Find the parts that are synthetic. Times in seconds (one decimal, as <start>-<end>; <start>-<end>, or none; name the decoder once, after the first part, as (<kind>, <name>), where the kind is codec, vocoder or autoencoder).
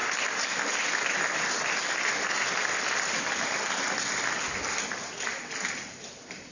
none